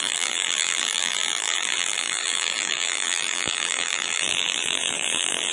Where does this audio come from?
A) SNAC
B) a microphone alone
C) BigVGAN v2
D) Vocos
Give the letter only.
C